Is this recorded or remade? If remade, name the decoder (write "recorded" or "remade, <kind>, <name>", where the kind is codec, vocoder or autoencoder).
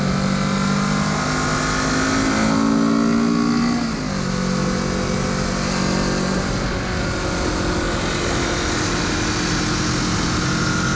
recorded